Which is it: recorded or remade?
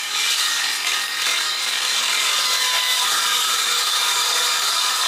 remade